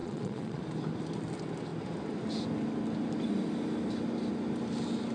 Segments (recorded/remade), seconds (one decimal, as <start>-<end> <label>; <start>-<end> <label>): 0.0-0.6 remade; 0.6-5.1 recorded